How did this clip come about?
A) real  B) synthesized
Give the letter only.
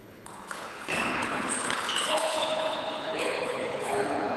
B